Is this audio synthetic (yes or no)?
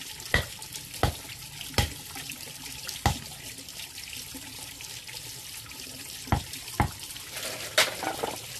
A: no